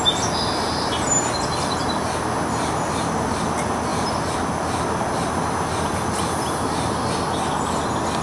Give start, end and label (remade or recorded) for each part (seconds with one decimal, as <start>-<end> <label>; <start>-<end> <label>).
0.0-8.2 recorded